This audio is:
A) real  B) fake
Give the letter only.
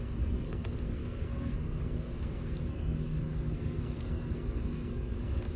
B